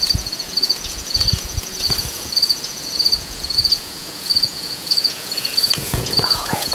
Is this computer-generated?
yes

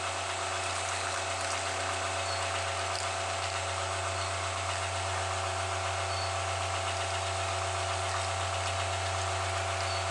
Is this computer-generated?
no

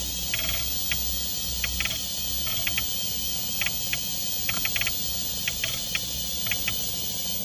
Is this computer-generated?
no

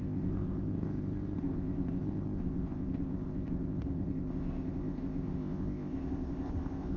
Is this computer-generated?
yes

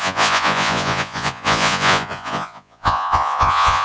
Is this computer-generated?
yes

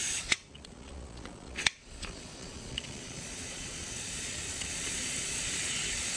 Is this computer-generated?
yes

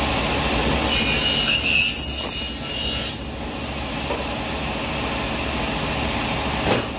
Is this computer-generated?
no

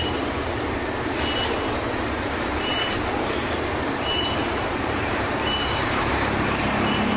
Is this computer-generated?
yes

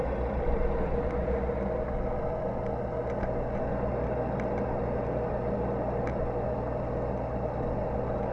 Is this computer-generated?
no